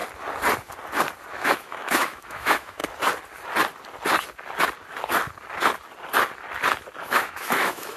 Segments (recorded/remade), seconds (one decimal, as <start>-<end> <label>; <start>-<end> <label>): 0.0-1.3 recorded; 1.3-2.8 remade; 2.8-7.0 recorded; 7.0-8.0 remade